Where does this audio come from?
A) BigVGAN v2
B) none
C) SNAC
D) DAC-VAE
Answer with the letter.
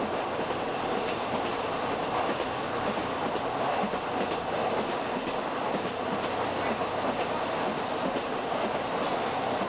B